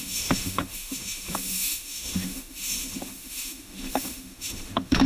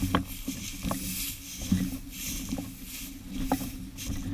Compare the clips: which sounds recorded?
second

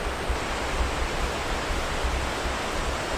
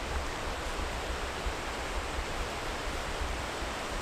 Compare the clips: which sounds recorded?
first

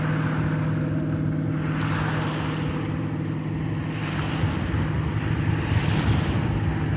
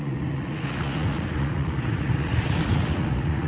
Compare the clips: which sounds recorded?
first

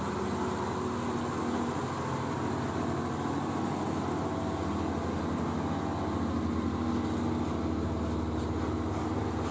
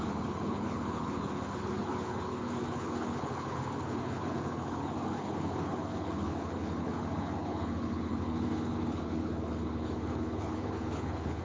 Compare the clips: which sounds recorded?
first